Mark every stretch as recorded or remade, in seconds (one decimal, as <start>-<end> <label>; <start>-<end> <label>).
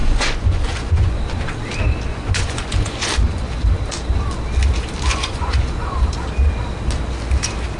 0.0-1.2 remade; 1.2-2.1 recorded; 2.1-3.1 remade; 3.1-5.1 recorded; 5.1-6.0 remade; 6.0-7.8 recorded